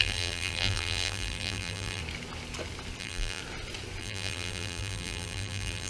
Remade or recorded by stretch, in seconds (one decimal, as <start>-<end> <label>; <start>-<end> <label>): 0.0-2.0 remade; 2.0-3.0 recorded; 3.0-3.4 remade; 3.4-4.0 recorded; 4.0-5.9 remade

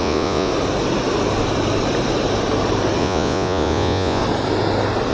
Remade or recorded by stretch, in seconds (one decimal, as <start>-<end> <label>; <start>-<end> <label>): 0.0-0.5 remade; 0.5-3.0 recorded; 3.0-4.2 remade; 4.2-5.1 recorded

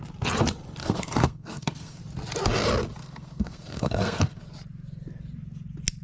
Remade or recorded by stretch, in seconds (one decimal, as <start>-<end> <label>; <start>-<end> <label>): 0.0-0.8 recorded; 0.8-2.0 remade; 2.0-3.0 recorded; 3.0-4.4 remade; 4.4-6.0 recorded

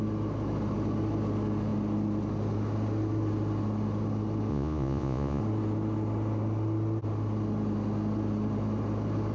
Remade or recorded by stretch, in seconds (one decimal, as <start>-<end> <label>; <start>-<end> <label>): 0.0-4.5 recorded; 4.5-5.4 remade; 5.4-9.3 recorded

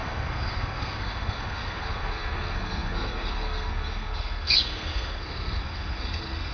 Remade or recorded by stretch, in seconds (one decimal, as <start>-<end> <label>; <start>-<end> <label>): 0.0-6.5 remade

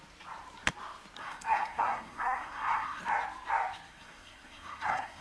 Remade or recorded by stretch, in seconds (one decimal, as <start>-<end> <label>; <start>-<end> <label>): 0.0-1.2 recorded; 1.2-3.0 remade; 3.0-3.9 recorded; 3.9-5.2 remade